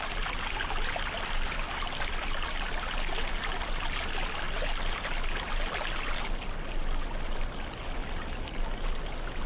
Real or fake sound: real